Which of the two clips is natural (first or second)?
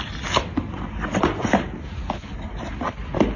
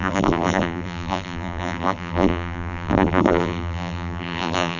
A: first